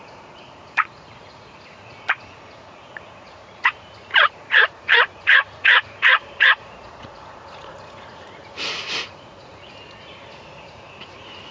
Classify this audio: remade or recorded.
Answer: remade